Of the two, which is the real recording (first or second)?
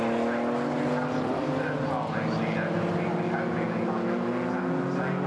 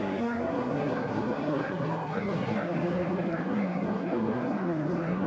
first